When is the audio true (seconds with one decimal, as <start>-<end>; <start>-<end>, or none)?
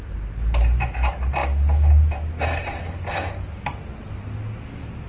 0.0-5.1